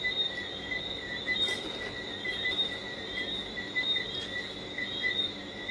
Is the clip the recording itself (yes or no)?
yes